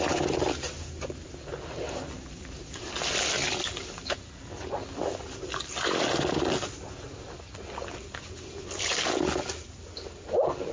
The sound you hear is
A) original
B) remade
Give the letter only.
A